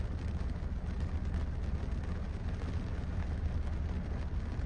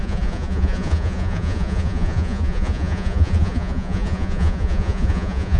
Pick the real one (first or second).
first